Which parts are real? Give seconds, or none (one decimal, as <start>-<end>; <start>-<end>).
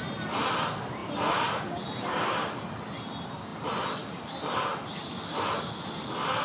0.0-1.0; 2.8-3.5; 5.7-6.4